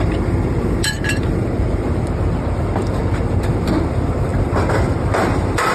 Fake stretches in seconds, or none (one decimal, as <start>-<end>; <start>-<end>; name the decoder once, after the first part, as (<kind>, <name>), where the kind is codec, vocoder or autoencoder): 0.0-5.7 (vocoder, BigVGAN v2)